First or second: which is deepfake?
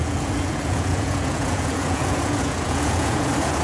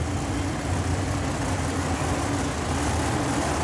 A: first